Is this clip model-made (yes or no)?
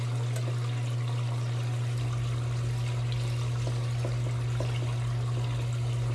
no